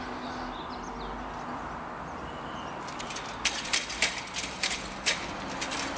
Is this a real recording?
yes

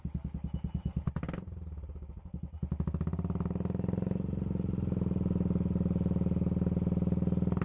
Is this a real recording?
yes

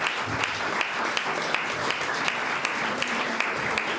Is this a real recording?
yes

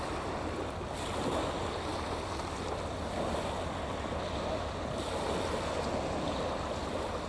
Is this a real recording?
yes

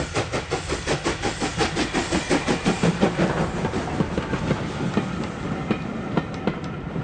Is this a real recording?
yes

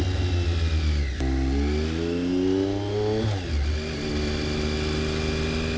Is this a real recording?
yes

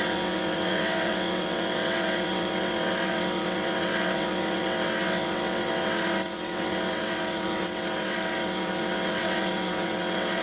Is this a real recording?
no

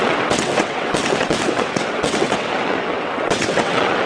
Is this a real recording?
no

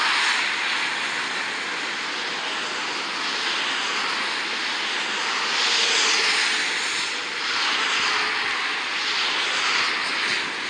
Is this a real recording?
yes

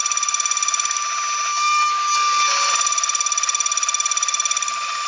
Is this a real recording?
yes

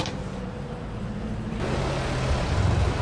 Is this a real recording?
yes